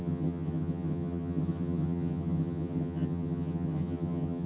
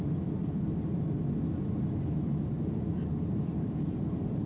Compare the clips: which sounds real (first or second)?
second